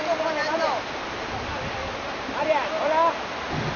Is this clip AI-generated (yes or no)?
no